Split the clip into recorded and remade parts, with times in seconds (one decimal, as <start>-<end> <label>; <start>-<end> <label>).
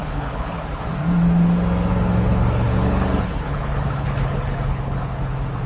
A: 0.0-0.9 remade; 0.9-1.9 recorded; 1.9-5.3 remade; 5.3-5.7 recorded